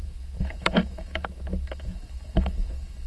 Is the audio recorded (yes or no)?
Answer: no